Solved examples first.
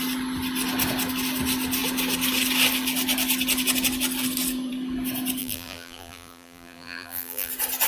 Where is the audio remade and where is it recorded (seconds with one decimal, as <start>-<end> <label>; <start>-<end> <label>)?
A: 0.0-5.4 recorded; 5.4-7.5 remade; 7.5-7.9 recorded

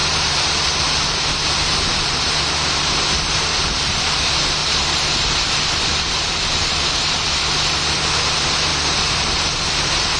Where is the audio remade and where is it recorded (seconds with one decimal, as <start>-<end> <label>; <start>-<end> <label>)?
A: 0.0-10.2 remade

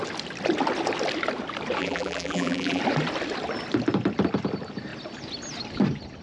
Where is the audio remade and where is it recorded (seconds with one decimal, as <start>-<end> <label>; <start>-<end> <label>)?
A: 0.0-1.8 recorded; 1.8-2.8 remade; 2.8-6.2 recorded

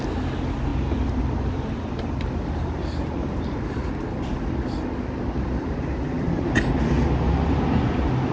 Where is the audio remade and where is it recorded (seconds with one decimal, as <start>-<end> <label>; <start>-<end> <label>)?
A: 0.0-8.3 recorded